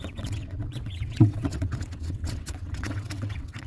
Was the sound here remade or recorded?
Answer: remade